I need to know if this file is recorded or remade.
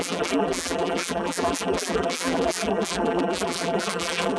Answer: remade